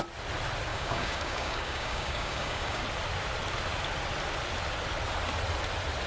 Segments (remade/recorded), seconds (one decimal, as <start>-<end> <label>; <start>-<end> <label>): 0.0-0.7 recorded; 0.7-2.8 remade; 2.8-6.1 recorded